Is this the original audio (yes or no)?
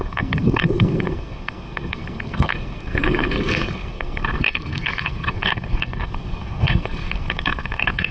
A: no